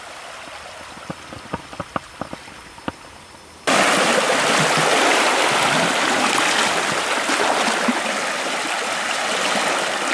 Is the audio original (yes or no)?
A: yes